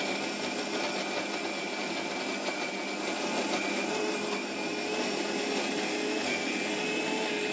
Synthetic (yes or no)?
no